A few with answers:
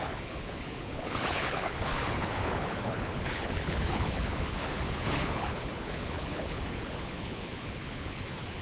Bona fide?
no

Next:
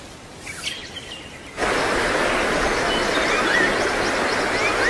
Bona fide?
yes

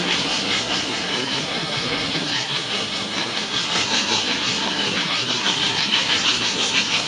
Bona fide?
no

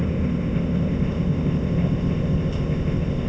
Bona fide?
no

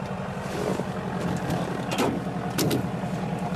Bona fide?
yes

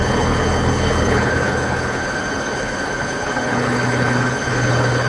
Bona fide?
no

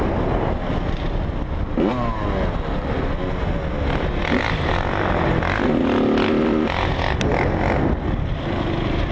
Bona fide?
yes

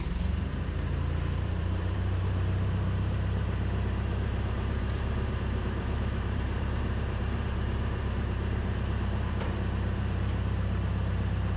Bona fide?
no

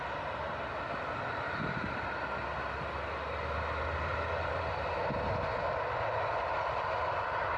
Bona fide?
yes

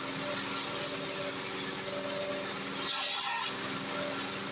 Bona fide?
yes